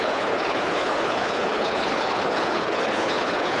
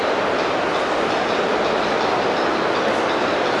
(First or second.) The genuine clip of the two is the second